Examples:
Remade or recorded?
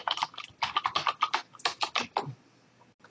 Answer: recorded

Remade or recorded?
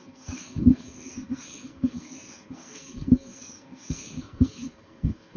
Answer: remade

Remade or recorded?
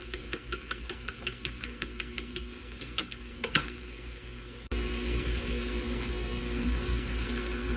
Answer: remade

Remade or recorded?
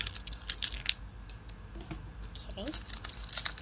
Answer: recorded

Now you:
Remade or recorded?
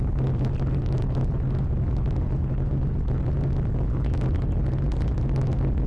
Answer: recorded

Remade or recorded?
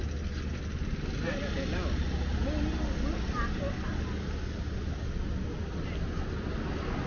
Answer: recorded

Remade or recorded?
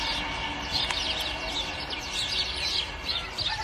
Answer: recorded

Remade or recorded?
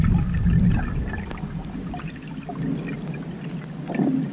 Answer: recorded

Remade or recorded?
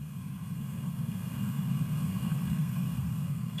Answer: remade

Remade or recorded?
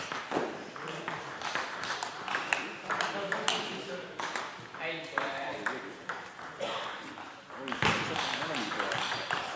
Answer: recorded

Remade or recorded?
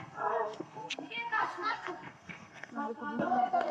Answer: remade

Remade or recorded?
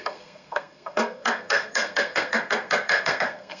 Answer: remade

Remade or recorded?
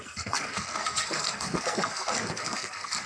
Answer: remade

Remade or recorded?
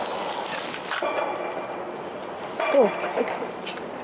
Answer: recorded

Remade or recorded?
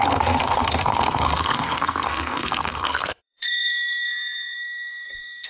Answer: remade